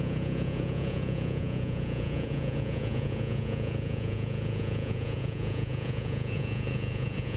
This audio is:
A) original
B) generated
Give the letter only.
B